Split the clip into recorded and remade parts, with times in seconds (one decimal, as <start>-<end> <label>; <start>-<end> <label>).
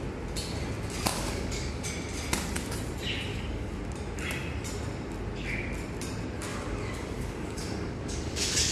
0.0-1.1 recorded; 1.1-1.8 remade; 1.8-3.3 recorded; 3.3-3.8 remade; 3.8-6.5 recorded; 6.5-8.7 remade